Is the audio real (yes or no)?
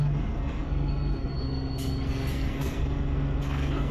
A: no